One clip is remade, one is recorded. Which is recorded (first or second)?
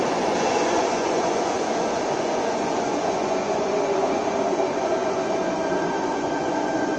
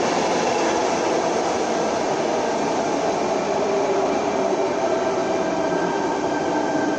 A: second